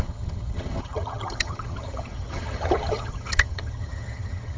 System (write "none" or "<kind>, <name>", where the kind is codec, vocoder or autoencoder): vocoder, HiFi-GAN